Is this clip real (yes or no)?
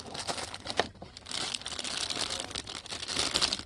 yes